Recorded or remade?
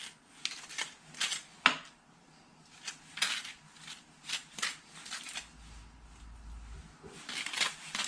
recorded